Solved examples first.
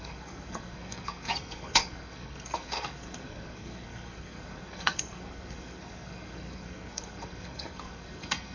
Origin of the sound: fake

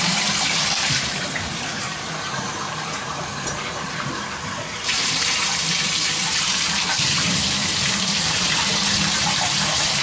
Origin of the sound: fake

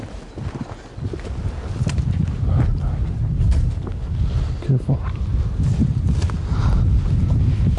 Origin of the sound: real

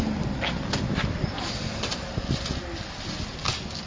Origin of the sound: real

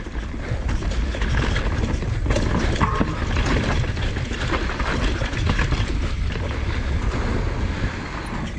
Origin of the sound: real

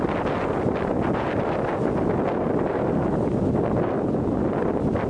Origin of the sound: real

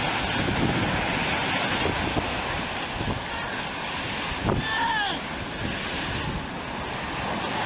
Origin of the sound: real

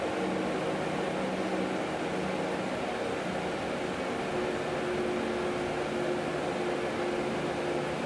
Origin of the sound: real